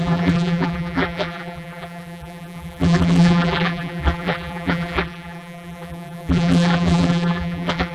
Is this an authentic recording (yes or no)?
no